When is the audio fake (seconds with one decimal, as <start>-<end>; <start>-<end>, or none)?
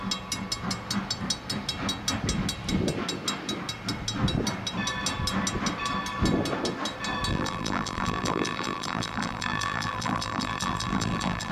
7.3-11.5